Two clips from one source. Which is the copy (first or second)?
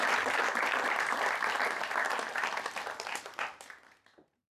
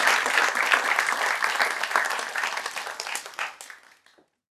first